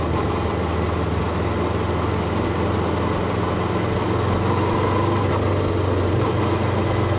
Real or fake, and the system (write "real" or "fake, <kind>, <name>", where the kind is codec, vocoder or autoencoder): real